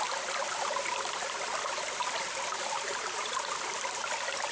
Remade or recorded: recorded